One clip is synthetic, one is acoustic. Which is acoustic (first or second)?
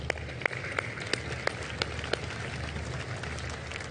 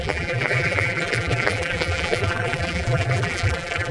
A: first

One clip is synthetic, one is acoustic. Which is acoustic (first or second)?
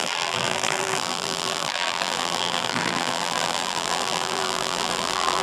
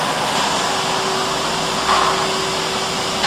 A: second